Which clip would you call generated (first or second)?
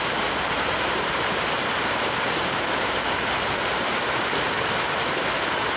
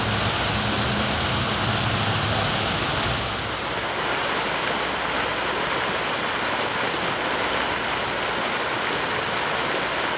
first